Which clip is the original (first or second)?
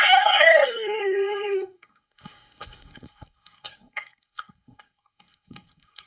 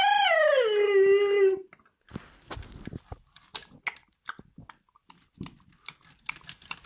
second